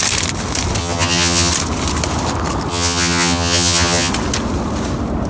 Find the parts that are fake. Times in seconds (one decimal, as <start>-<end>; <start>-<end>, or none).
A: 0.8-1.5; 2.7-4.1